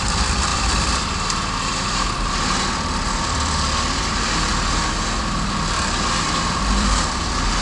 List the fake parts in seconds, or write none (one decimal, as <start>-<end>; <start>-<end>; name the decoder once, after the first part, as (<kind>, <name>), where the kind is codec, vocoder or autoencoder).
0.0-4.5 (vocoder, BigVGAN v2); 5.2-7.6

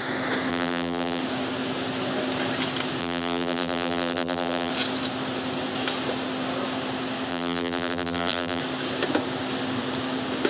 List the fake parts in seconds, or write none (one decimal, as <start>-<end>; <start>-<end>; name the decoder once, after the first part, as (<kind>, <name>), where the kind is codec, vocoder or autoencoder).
0.5-1.2 (vocoder, BigVGAN v2); 3.0-4.7; 7.3-8.6

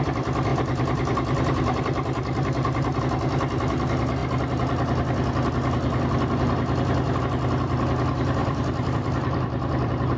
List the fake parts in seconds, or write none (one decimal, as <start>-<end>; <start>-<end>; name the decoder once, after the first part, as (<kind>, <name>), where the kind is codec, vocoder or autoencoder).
0.5-3.0 (vocoder, BigVGAN v2); 8.4-10.2

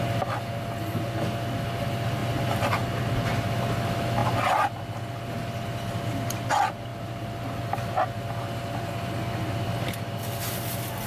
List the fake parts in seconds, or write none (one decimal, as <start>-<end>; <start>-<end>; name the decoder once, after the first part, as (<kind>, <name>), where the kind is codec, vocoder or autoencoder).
none

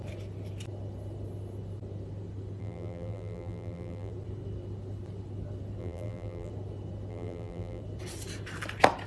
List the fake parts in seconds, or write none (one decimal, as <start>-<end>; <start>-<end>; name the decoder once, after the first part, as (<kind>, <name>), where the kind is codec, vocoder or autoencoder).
2.6-4.1 (vocoder, BigVGAN v2); 5.8-6.5; 7.1-7.8

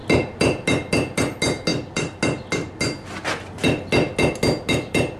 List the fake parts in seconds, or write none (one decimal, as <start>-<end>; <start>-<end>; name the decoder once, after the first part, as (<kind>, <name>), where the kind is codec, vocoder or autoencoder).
1.7-2.2 (vocoder, BigVGAN v2)

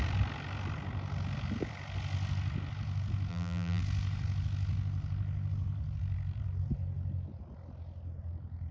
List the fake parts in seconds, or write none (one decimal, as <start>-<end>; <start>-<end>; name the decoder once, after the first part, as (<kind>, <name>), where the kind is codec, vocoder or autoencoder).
3.3-3.8 (vocoder, BigVGAN v2)